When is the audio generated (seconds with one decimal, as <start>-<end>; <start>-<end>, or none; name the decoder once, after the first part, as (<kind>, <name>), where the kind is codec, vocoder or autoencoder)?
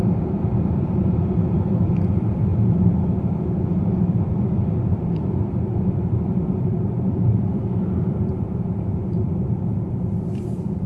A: 0.0-2.5 (vocoder, BigVGAN v2); 3.5-10.9